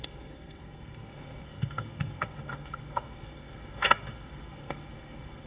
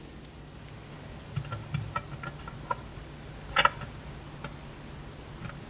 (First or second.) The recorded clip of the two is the second